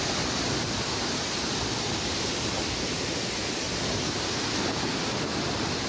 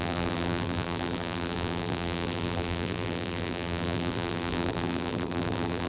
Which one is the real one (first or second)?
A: first